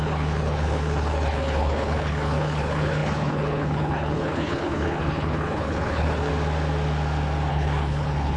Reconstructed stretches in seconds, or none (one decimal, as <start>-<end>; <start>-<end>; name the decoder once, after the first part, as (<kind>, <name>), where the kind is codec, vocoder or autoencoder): 0.0-6.3 (codec, HILCodec); 7.5-8.4